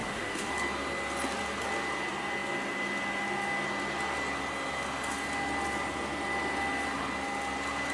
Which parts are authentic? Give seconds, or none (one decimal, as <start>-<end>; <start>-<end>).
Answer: 0.5-7.9